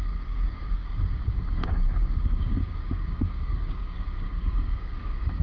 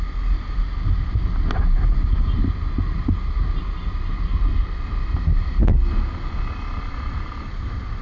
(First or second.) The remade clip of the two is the first